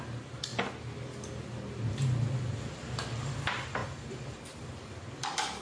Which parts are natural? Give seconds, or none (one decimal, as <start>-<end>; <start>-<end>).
0.0-5.6